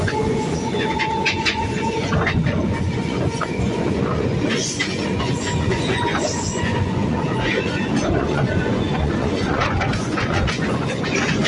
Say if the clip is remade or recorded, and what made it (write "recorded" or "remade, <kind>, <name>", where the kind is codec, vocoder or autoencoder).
remade, vocoder, Vocos